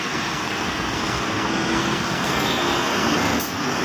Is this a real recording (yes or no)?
no